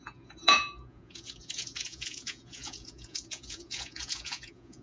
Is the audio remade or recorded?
remade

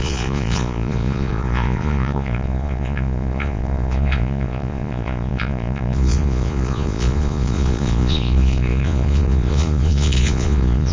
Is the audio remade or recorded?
remade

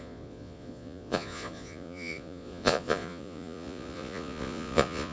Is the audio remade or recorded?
remade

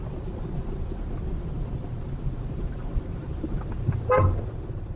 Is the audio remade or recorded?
recorded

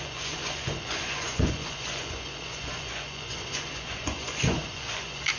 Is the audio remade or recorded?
remade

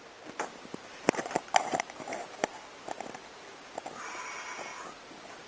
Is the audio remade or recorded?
recorded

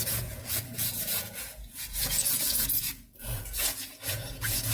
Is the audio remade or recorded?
remade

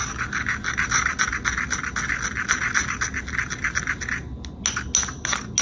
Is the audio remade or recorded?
recorded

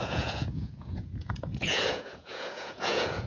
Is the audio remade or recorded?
remade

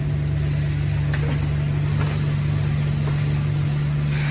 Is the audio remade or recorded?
recorded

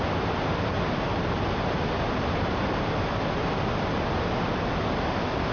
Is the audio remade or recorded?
recorded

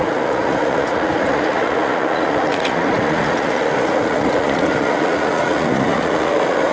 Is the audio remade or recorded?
remade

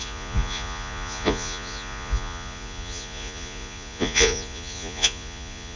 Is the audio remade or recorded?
remade